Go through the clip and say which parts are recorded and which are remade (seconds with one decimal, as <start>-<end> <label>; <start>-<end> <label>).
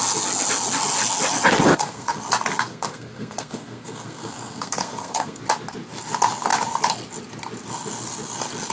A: 0.0-1.7 recorded; 1.7-2.2 remade; 2.2-2.7 recorded; 2.7-5.4 remade; 5.4-8.7 recorded